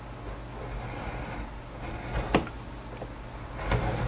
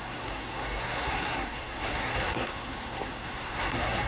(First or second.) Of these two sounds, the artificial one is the second